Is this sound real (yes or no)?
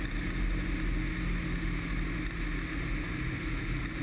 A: yes